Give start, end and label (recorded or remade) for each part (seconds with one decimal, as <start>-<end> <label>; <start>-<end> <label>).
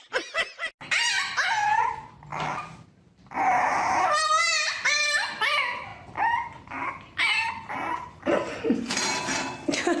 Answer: 0.0-10.0 recorded